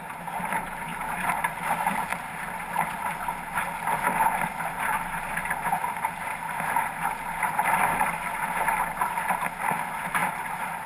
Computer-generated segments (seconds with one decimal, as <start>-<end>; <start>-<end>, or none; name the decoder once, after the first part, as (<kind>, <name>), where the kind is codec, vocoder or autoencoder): 0.9-1.7 (vocoder, BigVGAN v2)